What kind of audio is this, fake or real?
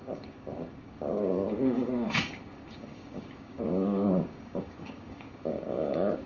fake